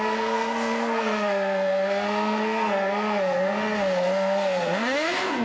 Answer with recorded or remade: remade